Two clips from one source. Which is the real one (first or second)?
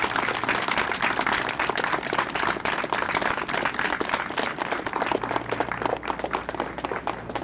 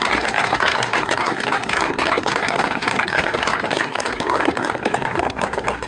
first